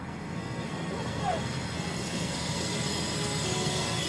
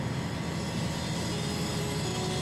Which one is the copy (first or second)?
first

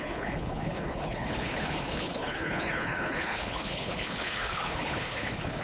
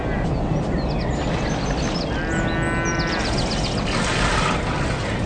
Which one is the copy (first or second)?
first